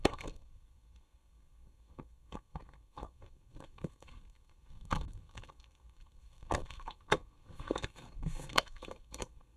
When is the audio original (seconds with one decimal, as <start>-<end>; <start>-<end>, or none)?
none